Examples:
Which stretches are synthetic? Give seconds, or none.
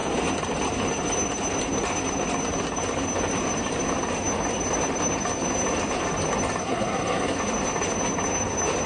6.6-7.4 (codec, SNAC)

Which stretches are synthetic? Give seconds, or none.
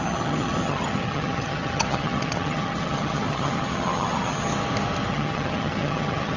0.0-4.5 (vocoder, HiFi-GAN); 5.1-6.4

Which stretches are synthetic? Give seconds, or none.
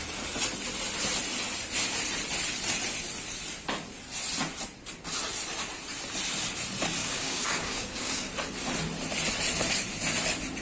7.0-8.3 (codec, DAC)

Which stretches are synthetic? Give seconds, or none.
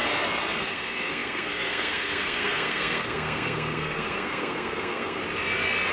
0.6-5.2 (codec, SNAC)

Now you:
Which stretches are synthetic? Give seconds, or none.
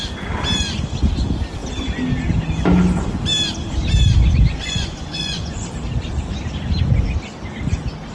4.6-5.7 (vocoder, Vocos)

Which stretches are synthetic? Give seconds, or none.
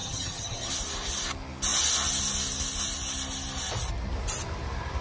0.0-0.7 (vocoder, HiFi-GAN)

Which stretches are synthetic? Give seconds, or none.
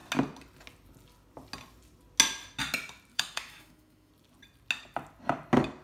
3.1-4.1 (autoencoder, DAC-VAE)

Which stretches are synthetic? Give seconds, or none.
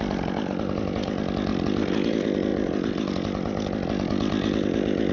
none